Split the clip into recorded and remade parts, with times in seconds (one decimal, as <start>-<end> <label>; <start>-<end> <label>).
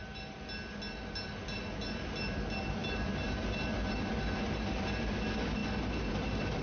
0.0-6.6 recorded